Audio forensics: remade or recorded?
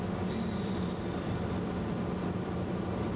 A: recorded